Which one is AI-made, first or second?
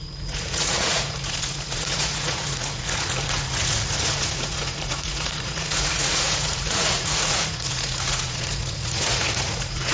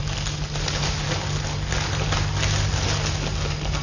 first